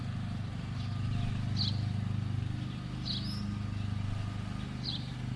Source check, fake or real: real